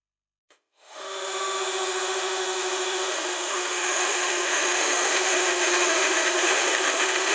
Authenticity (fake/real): fake